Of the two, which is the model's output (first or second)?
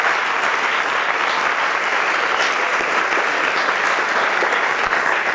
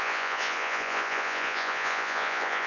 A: second